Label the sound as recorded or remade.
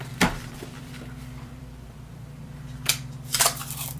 remade